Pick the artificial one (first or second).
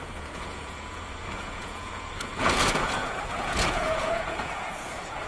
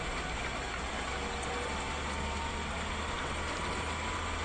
first